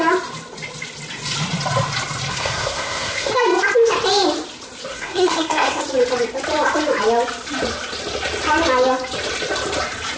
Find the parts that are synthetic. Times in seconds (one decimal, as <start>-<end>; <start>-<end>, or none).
2.3-3.3; 4.9-5.8